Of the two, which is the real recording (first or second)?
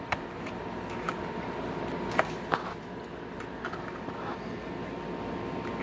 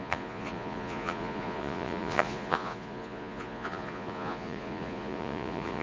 first